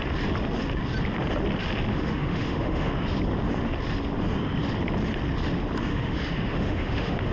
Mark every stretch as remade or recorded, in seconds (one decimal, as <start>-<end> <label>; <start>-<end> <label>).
0.0-1.9 recorded; 1.9-2.9 remade; 2.9-5.9 recorded; 5.9-7.3 remade